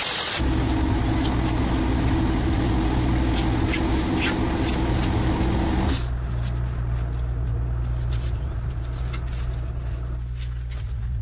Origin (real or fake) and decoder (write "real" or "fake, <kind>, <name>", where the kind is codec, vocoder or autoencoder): real